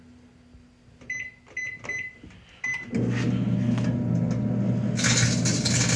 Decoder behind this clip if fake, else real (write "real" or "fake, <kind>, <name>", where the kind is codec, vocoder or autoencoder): real